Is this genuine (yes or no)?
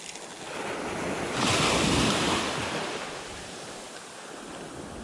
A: yes